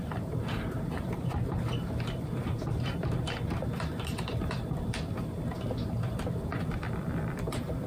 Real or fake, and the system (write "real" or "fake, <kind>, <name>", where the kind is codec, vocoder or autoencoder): fake, vocoder, BigVGAN v2